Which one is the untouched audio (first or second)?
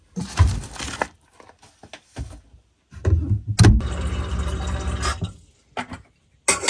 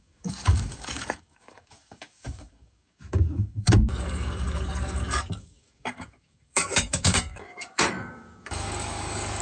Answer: first